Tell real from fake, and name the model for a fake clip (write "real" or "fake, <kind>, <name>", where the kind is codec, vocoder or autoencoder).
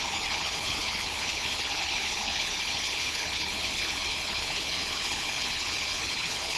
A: fake, codec, HILCodec